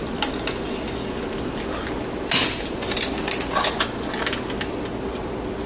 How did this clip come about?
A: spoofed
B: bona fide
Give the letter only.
B